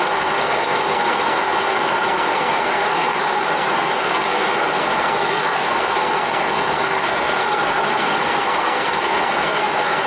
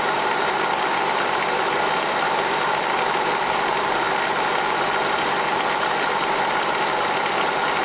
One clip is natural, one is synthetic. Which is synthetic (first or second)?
first